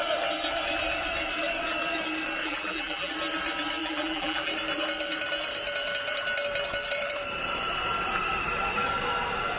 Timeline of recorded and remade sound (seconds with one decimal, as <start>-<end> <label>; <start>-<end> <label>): 0.0-2.4 recorded; 2.4-3.1 remade; 3.1-3.8 recorded; 3.8-4.5 remade; 4.5-9.6 recorded